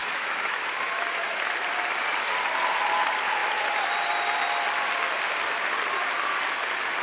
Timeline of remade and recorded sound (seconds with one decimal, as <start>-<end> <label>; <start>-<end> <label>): 0.0-1.6 remade; 1.6-7.0 recorded